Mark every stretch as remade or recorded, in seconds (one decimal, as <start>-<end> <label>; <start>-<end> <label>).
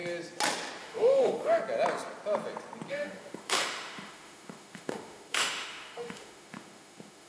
0.0-0.8 recorded; 0.8-1.6 remade; 1.6-2.9 recorded; 2.9-7.3 remade